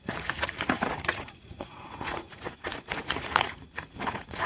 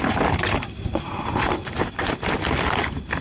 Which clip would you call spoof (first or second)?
first